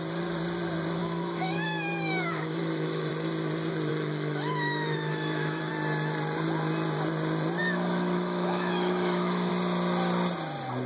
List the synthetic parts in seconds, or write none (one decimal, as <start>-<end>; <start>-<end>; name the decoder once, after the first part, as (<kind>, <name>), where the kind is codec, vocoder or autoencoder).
1.0-3.1 (autoencoder, DAC-VAE); 3.9-5.7; 7.6-9.5